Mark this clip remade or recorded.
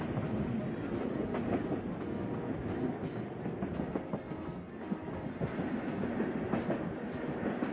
recorded